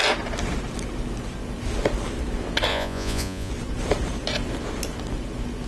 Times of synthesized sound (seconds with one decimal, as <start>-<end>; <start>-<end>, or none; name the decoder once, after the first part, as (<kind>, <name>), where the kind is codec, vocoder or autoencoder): 2.7-3.5 (vocoder, Vocos)